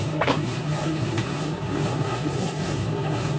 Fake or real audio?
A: fake